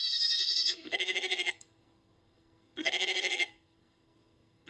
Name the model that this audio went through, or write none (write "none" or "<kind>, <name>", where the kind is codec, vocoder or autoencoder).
codec, SNAC